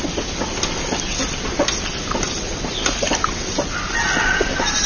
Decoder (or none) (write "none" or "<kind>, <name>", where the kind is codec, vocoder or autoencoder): none